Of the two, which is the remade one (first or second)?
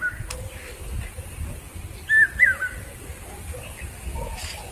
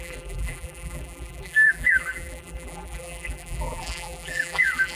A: second